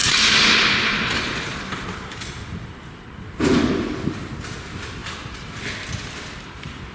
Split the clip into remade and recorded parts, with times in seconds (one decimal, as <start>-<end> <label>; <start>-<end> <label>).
0.0-6.9 recorded

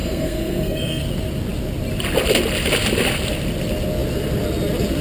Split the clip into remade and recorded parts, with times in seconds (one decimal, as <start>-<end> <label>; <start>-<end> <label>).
0.0-1.0 remade; 1.0-5.0 recorded

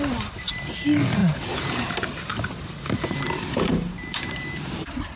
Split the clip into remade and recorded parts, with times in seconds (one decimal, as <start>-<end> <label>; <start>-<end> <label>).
0.0-5.2 remade

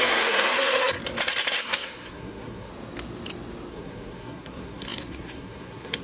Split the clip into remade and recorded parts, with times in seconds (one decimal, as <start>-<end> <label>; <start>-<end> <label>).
0.0-1.0 remade; 1.0-1.6 recorded; 1.6-2.7 remade; 2.7-3.7 recorded; 3.7-6.0 remade

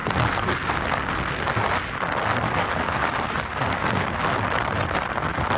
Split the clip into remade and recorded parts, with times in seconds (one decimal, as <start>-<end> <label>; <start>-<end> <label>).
0.0-5.6 recorded

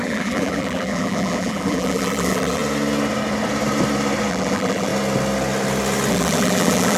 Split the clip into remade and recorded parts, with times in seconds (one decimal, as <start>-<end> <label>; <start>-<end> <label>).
0.0-2.6 remade; 2.6-4.3 recorded; 4.3-4.9 remade; 4.9-6.1 recorded; 6.1-7.0 remade

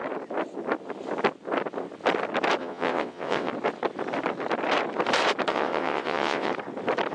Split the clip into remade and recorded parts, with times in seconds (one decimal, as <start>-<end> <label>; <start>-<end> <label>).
0.0-2.6 recorded; 2.6-3.5 remade; 3.5-5.5 recorded; 5.5-6.5 remade; 6.5-7.1 recorded